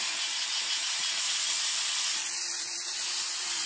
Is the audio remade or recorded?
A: remade